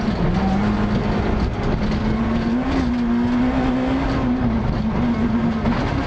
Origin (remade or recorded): recorded